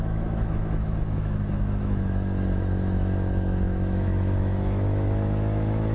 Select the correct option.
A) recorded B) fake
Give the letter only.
B